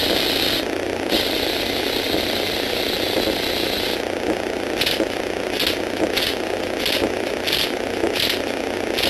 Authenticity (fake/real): real